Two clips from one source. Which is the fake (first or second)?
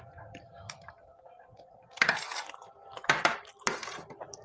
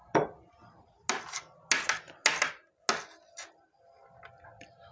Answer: first